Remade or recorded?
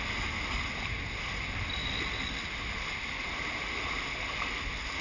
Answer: recorded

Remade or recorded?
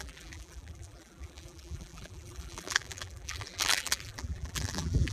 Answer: remade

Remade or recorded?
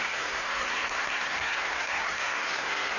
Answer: remade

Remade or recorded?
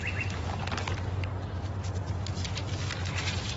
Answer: recorded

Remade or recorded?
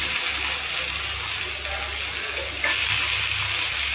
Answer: recorded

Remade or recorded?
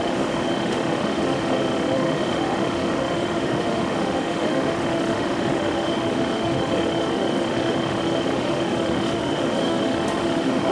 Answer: remade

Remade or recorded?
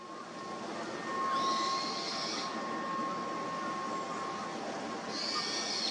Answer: recorded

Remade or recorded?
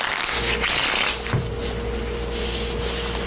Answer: recorded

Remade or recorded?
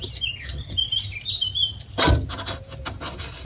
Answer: recorded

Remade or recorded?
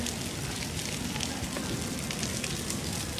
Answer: recorded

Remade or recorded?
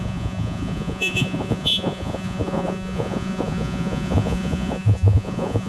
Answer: remade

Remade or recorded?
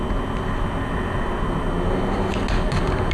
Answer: recorded